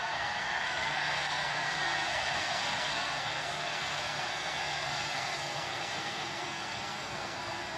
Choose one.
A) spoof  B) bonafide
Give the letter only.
A